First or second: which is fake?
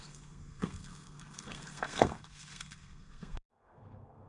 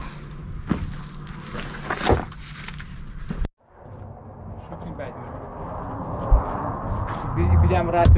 first